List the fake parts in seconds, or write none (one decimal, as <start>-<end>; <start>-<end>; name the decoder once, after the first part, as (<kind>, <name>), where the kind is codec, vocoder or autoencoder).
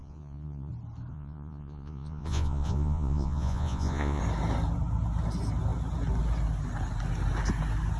0.0-0.7 (vocoder, Vocos); 1.1-4.2